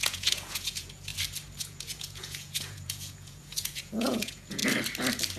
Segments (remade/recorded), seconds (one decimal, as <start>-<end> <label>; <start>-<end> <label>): 0.0-1.1 remade; 1.1-1.6 recorded; 1.6-4.6 remade; 4.6-5.4 recorded